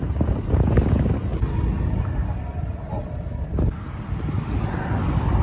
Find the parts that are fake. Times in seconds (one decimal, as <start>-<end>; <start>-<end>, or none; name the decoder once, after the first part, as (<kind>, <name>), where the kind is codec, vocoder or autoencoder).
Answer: none